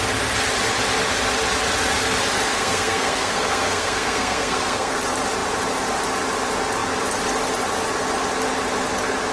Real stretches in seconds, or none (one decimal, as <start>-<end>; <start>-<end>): 0.0-2.5; 5.0-9.3